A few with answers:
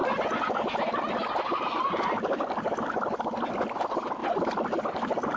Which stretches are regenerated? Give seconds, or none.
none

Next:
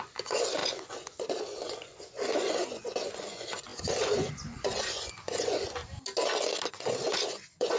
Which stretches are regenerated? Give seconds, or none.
0.0-5.8; 6.7-7.8

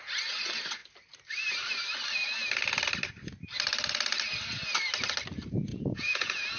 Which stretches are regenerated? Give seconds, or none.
5.7-6.6

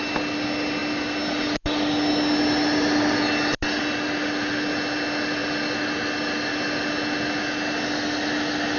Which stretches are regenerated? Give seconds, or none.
none

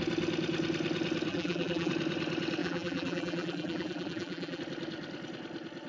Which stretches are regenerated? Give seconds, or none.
1.3-1.9; 2.6-4.6